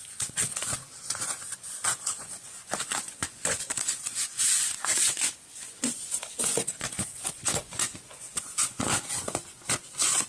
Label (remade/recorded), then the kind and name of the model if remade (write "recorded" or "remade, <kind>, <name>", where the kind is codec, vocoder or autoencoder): remade, vocoder, Vocos